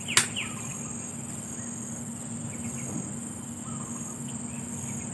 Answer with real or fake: real